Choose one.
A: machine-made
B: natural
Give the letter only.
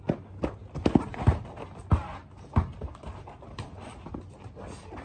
B